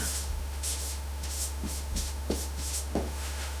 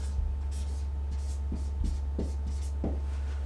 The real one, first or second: second